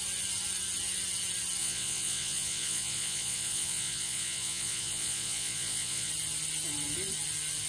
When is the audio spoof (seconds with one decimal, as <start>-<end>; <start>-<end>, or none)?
1.6-6.1